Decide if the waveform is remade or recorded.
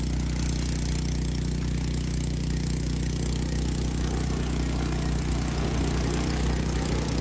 recorded